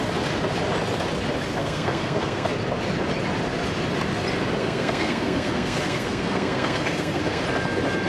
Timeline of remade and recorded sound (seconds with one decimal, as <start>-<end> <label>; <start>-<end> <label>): 0.0-1.6 recorded; 1.6-2.5 remade; 2.5-4.6 recorded; 4.6-7.4 remade; 7.4-8.1 recorded

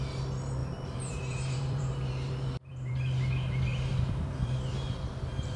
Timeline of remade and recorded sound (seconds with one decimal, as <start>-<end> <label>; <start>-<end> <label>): 0.0-0.6 recorded; 0.6-3.3 remade; 3.3-3.7 recorded; 3.7-4.7 remade; 4.7-5.6 recorded

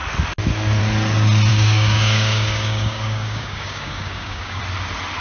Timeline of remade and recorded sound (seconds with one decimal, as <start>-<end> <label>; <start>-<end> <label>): 0.0-1.5 recorded; 1.5-4.6 remade; 4.6-5.2 recorded

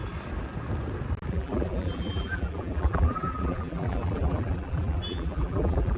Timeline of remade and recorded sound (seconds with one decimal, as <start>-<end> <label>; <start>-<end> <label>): 0.0-1.3 recorded; 1.3-6.0 remade

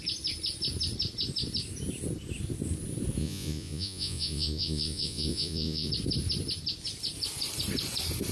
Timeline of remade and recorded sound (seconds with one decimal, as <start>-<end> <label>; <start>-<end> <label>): 0.0-3.2 recorded; 3.2-5.9 remade; 5.9-8.3 recorded

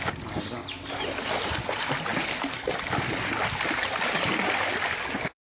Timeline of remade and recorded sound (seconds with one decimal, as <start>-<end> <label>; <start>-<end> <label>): 0.0-5.4 recorded